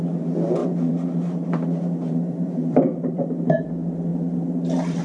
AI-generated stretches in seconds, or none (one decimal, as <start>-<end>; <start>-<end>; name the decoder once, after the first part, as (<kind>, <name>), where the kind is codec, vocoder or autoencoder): 0.6-3.6 (vocoder, BigVGAN v2); 4.1-5.0